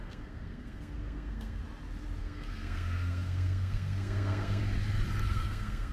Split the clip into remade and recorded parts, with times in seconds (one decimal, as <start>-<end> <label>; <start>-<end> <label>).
0.0-1.6 remade; 1.6-2.2 recorded; 2.2-4.6 remade; 4.6-5.3 recorded; 5.3-5.9 remade